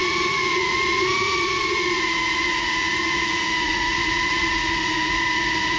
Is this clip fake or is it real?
fake